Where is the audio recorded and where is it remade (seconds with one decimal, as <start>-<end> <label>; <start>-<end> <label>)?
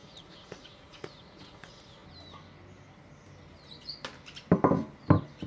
0.0-2.0 remade; 2.0-5.5 recorded